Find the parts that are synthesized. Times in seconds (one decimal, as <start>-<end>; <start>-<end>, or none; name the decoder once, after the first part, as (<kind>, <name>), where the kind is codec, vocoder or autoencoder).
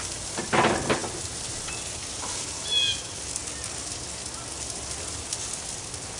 none